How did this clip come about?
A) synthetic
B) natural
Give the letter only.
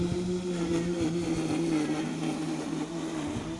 B